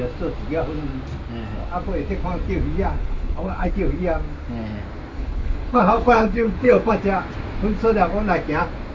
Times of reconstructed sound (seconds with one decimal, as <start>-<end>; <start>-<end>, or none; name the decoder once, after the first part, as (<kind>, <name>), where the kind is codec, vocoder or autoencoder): 3.0-3.7 (codec, HILCodec); 5.1-6.9